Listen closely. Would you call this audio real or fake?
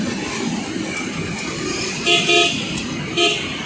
real